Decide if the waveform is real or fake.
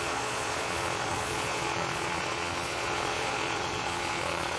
fake